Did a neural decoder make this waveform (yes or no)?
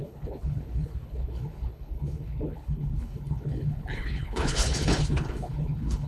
yes